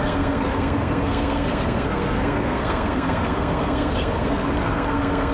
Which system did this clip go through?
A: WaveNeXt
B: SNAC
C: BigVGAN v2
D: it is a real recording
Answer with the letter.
B